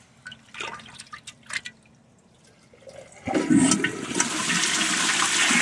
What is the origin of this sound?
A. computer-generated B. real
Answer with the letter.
B